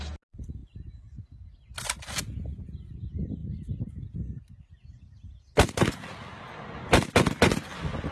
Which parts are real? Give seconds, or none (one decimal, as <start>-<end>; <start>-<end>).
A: 0.0-8.1